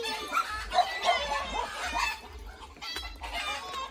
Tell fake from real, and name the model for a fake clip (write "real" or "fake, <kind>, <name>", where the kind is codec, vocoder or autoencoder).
real